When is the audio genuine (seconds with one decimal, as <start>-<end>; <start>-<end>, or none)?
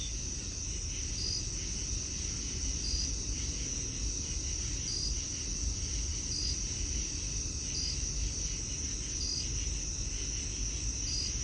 0.0-11.4